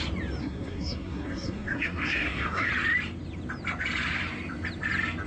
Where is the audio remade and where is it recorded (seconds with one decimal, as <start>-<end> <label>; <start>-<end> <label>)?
0.0-0.4 recorded; 0.4-2.7 remade; 2.7-5.3 recorded